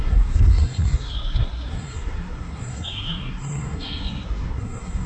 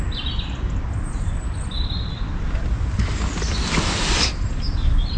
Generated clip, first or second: first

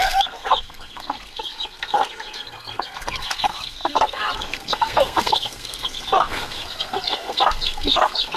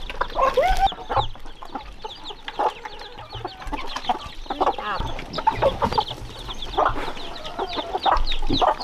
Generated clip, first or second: first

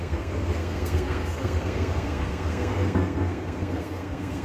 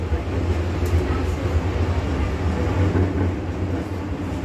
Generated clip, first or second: first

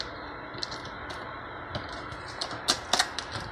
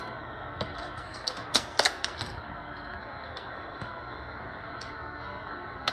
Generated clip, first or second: second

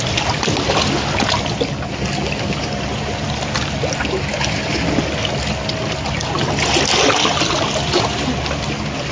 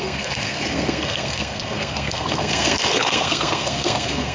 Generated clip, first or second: second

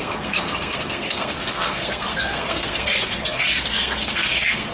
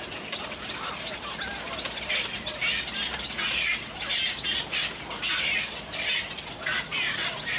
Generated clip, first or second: first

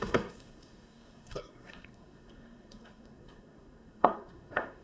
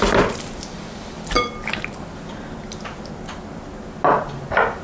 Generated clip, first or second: first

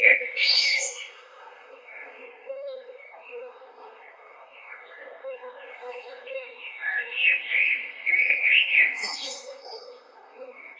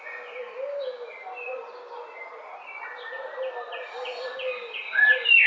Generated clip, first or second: first